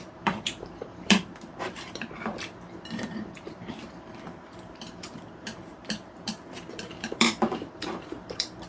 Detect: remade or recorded remade